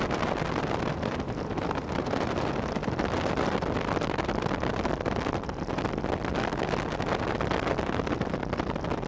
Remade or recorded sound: recorded